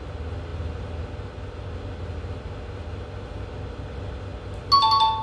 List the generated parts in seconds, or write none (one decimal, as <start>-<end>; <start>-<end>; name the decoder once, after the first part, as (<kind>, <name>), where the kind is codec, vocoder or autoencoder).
none